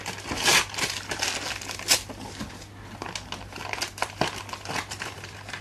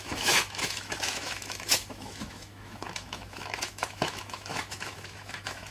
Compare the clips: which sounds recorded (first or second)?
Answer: first